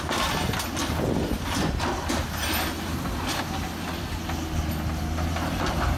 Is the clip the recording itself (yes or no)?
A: yes